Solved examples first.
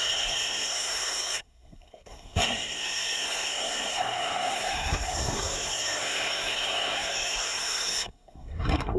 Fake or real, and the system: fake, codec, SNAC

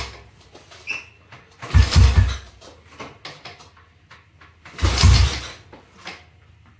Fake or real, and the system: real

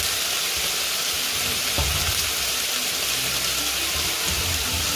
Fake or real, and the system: real